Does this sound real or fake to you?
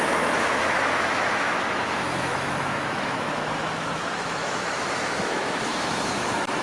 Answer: fake